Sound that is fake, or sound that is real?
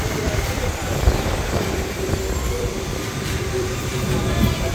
fake